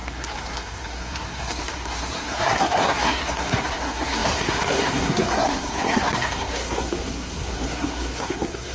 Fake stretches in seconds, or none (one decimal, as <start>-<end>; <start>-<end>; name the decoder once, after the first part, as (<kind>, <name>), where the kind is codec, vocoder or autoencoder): 0.0-8.7 (codec, SNAC)

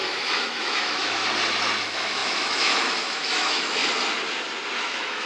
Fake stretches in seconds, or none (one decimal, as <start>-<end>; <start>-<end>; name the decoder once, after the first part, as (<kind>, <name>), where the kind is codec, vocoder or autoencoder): 0.0-1.2 (autoencoder, DAC-VAE); 1.8-3.8; 4.8-5.3

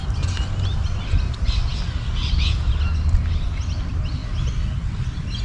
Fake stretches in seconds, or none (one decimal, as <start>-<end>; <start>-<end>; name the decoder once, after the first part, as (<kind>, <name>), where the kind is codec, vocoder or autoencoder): none

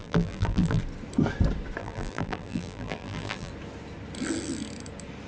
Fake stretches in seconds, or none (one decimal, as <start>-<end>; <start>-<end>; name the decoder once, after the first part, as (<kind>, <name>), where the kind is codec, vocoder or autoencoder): 0.0-0.8 (vocoder, BigVGAN v2); 1.8-3.5

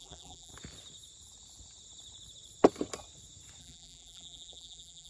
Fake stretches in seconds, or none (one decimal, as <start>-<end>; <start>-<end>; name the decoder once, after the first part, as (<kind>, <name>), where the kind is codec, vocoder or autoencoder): 0.0-0.5 (vocoder, BigVGAN v2); 3.6-5.1

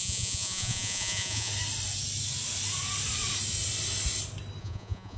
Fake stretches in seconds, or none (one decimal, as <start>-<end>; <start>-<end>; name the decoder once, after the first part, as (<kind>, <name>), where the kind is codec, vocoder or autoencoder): 0.0-1.5 (vocoder, Vocos); 4.6-5.2

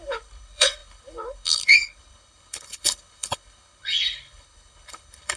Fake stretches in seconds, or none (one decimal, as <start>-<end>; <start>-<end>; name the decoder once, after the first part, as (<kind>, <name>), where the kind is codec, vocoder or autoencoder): 0.0-5.4 (codec, HILCodec)

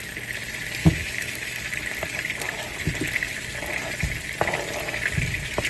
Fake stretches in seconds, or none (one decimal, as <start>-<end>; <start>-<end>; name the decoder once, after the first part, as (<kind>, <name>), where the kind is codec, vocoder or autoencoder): 0.8-1.6 (autoencoder, DAC-VAE)